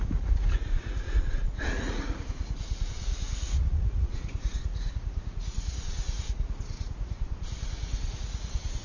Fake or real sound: fake